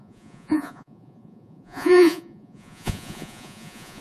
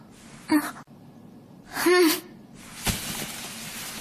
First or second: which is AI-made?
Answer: first